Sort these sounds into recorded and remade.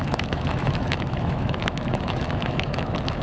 remade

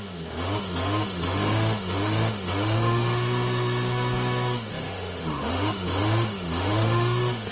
remade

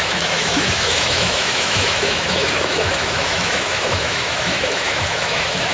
remade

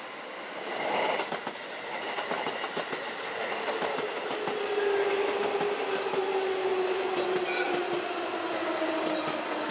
recorded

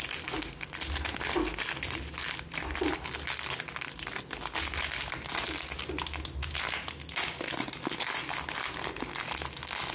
recorded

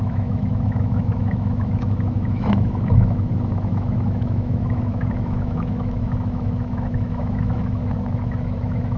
remade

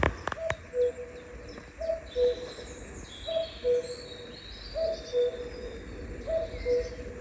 recorded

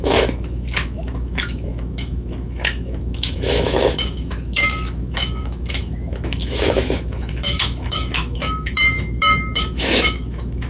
remade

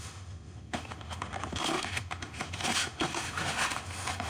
remade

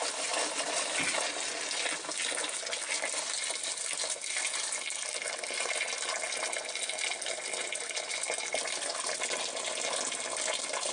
recorded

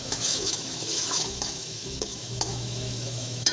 remade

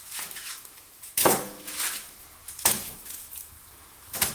remade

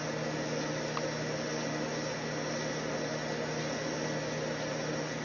recorded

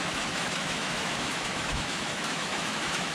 remade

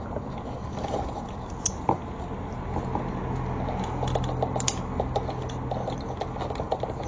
recorded